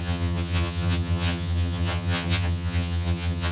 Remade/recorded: remade